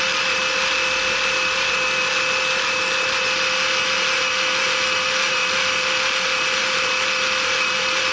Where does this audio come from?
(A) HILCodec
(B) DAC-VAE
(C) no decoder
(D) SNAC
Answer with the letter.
C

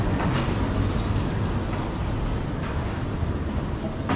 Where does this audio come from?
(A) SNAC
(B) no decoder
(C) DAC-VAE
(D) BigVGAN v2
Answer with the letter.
B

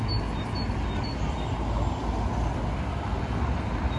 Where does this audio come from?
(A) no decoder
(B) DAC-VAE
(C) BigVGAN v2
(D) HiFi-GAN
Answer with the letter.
A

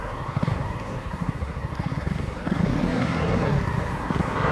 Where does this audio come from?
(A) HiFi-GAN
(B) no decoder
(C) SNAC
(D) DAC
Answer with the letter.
C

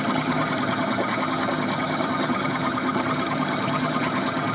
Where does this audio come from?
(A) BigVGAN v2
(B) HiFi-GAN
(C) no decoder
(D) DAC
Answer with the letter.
B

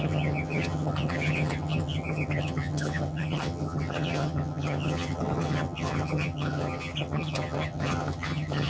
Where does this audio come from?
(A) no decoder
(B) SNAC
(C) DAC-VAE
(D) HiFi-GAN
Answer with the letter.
D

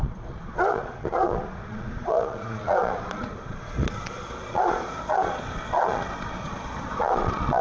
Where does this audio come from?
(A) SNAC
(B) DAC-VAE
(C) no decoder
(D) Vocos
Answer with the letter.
D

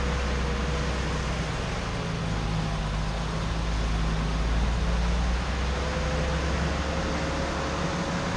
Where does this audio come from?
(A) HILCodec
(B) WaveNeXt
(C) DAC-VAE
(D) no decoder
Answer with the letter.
D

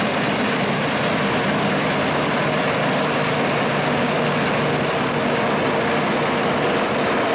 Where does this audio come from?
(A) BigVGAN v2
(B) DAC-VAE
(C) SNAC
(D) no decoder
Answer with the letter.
D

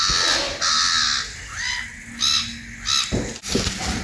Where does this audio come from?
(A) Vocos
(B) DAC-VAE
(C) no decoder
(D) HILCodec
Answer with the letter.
C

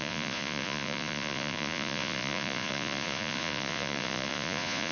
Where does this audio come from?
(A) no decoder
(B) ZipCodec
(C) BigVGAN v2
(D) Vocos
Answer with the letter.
D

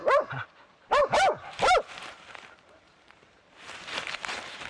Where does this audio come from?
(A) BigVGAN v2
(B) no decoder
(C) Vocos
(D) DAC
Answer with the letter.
A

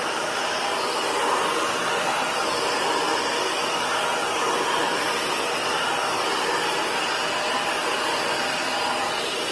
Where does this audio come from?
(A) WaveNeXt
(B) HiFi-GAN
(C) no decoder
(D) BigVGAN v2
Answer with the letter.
C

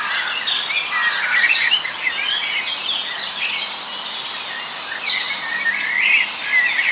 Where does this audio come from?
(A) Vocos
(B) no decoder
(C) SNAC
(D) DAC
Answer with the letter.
B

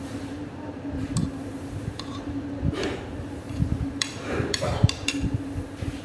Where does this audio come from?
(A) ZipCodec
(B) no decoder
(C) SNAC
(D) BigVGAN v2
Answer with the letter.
D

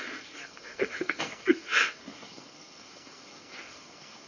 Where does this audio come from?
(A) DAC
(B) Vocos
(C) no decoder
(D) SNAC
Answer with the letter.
D